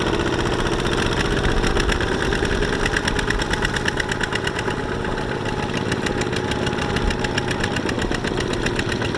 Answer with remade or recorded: recorded